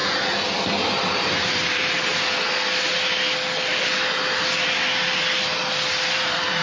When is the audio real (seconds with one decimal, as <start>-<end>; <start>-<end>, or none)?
0.0-1.2; 2.1-6.1